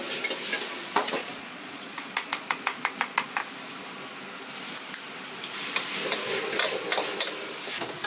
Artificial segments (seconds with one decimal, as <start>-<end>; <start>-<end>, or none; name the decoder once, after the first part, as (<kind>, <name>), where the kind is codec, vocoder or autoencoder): 0.8-3.4 (vocoder, Vocos)

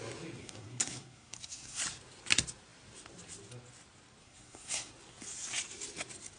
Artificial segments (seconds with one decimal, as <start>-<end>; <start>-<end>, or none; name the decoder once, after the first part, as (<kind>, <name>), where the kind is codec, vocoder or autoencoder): 0.4-1.8 (codec, SNAC); 4.2-4.9